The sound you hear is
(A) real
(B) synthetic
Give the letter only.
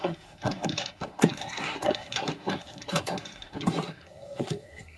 B